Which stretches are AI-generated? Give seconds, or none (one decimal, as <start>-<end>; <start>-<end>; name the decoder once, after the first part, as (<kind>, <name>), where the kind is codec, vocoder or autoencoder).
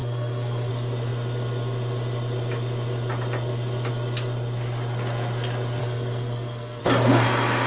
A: 0.0-0.7 (codec, SNAC); 5.8-6.8